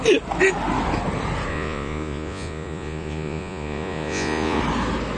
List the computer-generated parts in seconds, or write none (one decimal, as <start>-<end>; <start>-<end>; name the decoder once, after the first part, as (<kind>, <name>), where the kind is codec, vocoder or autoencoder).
1.5-4.6 (vocoder, Vocos)